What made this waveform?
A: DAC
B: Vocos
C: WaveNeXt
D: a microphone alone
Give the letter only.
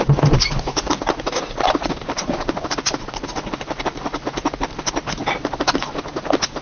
D